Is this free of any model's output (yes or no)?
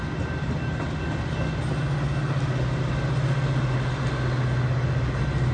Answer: yes